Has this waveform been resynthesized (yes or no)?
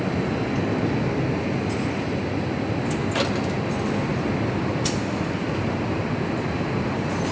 no